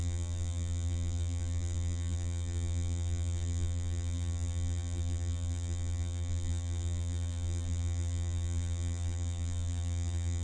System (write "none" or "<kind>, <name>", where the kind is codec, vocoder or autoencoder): vocoder, BigVGAN v2